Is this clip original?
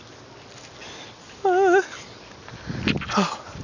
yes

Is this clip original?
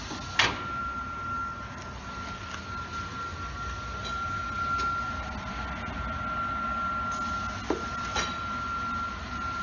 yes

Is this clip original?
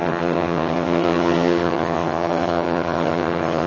no